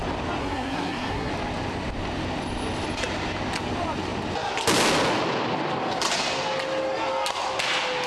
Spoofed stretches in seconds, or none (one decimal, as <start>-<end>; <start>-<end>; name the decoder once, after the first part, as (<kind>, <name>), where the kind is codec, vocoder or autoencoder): 0.4-1.3 (codec, SNAC)